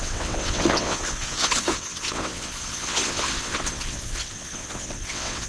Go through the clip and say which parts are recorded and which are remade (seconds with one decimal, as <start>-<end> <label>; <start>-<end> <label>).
0.0-5.5 remade